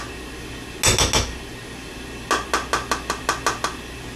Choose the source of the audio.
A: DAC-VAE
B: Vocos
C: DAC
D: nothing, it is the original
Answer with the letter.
D